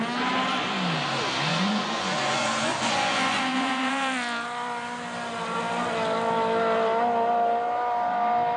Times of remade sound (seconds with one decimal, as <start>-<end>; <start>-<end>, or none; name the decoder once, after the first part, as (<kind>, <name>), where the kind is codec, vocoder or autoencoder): 1.5-3.9 (vocoder, Vocos)